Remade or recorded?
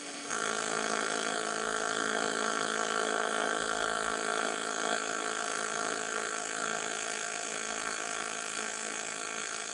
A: remade